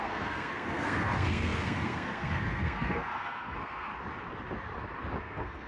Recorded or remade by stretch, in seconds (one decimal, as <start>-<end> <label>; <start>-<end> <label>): 0.0-3.9 remade; 3.9-5.2 recorded; 5.2-5.7 remade